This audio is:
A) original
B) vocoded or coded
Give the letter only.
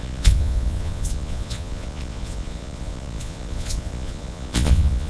B